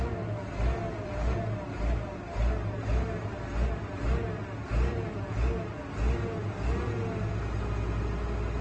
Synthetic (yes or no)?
no